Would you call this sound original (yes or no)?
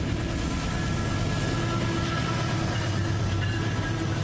yes